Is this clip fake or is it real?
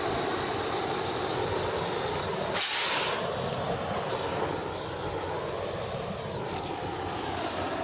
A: real